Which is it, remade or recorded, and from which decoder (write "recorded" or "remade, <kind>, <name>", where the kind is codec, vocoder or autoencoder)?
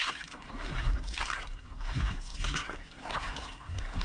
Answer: remade, codec, SNAC